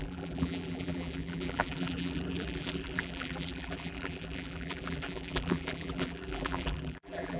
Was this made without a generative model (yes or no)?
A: no